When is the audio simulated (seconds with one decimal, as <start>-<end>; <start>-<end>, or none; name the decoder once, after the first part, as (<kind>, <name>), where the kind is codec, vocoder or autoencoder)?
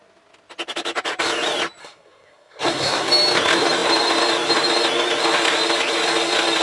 1.8-3.1 (codec, SNAC)